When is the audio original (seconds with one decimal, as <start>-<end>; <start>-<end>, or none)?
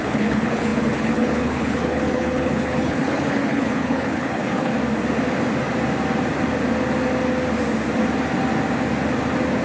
4.7-9.6